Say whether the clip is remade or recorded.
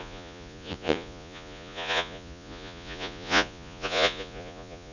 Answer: remade